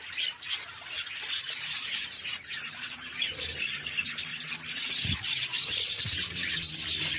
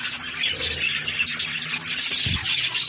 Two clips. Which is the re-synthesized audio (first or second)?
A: first